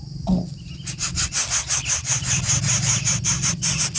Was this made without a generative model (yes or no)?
yes